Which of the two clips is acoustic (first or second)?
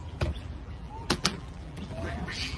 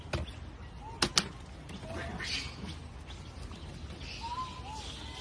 second